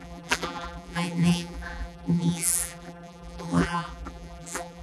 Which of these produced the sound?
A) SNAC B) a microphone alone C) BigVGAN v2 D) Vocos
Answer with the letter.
C